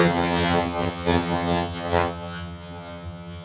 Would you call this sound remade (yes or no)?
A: yes